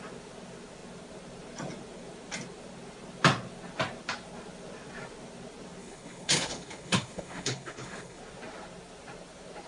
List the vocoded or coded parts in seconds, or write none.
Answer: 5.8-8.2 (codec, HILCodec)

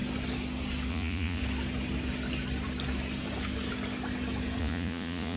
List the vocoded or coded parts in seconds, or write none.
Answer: 0.9-1.4 (vocoder, Vocos); 4.6-5.4

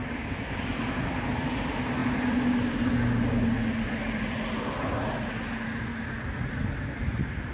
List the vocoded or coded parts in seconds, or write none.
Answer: 0.0-0.6 (codec, DAC)